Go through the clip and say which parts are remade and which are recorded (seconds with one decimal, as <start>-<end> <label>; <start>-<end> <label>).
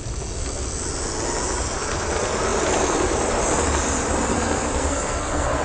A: 0.0-4.3 recorded; 4.3-5.6 remade